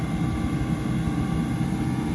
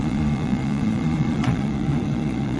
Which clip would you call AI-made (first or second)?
second